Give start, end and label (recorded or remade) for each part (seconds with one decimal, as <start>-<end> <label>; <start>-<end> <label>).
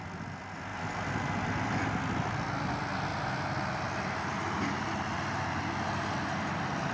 0.0-6.9 recorded